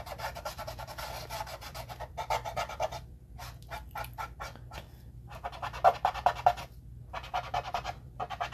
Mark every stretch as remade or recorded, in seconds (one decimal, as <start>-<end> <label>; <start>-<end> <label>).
0.0-3.4 remade; 3.4-7.7 recorded; 7.7-8.5 remade